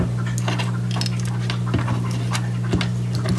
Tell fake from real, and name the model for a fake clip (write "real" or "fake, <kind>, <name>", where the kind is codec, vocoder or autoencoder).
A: real